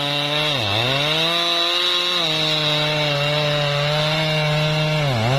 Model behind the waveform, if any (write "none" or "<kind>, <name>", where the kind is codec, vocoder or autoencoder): none